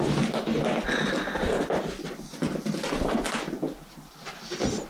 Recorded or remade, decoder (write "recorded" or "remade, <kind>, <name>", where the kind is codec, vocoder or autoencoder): recorded